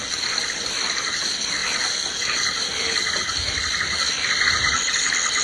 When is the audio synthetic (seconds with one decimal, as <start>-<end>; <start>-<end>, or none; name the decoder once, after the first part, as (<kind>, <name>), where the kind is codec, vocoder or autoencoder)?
0.0-1.6 (vocoder, BigVGAN v2); 4.8-5.4